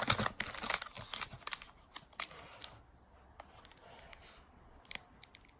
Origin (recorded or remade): recorded